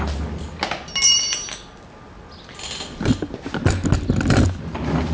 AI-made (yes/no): no